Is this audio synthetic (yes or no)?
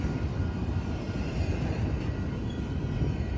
no